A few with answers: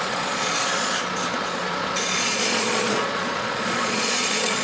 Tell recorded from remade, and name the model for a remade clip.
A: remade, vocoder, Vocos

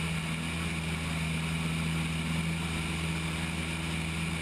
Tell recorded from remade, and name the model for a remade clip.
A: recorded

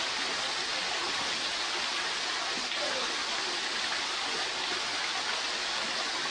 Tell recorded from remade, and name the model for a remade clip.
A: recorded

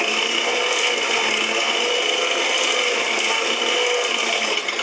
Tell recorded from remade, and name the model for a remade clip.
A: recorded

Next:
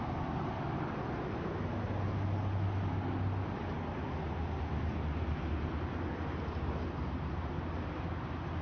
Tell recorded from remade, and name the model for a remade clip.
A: recorded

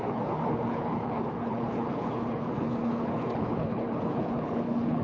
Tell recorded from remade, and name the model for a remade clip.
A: remade, codec, HILCodec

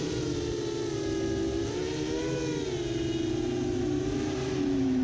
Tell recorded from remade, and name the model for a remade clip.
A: recorded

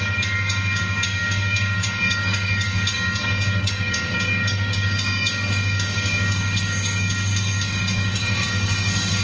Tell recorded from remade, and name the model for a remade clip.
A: remade, codec, DAC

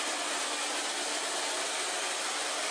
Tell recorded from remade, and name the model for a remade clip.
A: recorded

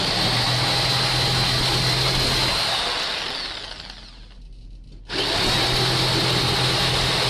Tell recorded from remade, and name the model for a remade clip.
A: recorded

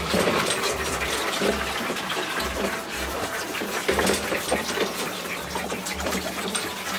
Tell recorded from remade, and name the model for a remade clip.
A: remade, vocoder, BigVGAN v2